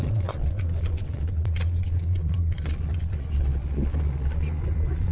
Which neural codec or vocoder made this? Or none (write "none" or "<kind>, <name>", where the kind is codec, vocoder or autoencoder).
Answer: vocoder, Vocos